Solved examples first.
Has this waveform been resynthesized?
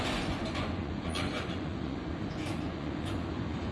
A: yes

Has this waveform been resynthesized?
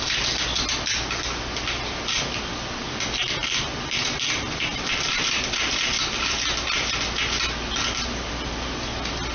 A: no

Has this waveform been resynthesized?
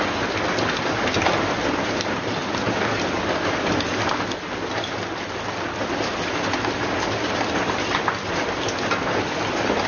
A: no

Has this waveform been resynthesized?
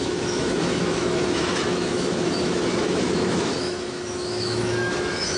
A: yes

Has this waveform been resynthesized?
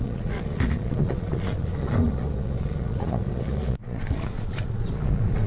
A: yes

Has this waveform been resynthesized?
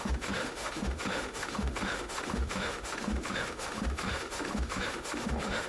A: yes